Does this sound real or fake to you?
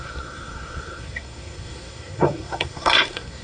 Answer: fake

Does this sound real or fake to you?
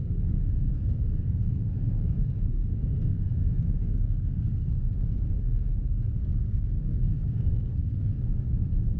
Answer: fake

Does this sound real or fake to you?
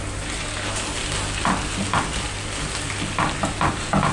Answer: real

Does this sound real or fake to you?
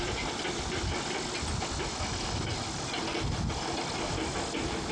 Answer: real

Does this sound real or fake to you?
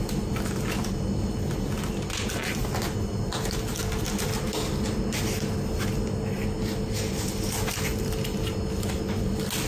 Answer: real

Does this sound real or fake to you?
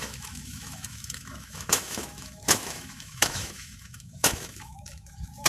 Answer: fake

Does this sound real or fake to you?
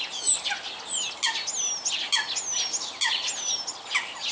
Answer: real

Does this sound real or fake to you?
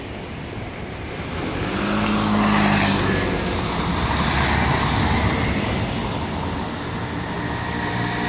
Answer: real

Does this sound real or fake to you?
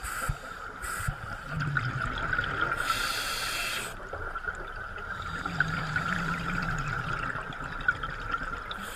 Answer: real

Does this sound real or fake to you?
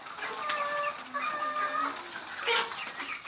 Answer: real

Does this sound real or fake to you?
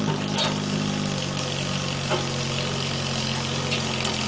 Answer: real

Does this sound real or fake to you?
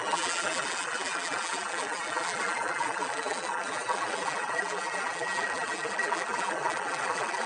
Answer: fake